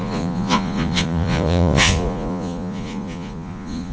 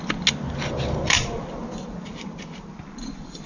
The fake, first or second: first